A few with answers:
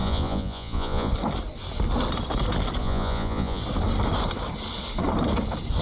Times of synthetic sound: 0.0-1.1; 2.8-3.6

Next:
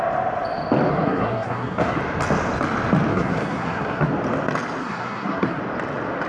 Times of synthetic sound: 0.9-2.0; 3.1-4.1; 4.8-5.6

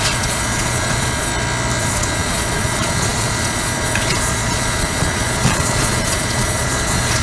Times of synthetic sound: 0.0-1.3; 1.8-7.2

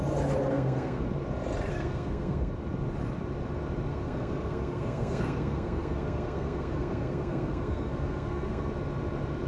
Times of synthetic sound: 0.5-1.0; 1.7-2.5; 3.9-8.7

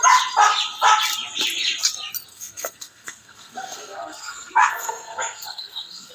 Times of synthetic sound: 2.3-6.1